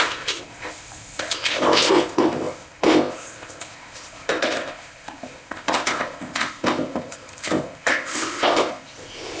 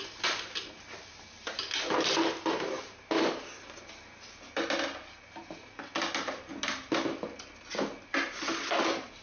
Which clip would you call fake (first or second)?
first